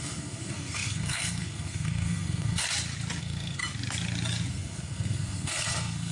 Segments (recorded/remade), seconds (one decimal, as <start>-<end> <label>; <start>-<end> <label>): 0.0-2.6 remade; 2.6-3.2 recorded; 3.2-3.6 remade; 3.6-4.5 recorded; 4.5-6.1 remade